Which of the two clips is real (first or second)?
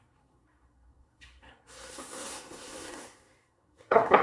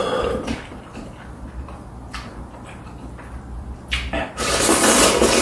second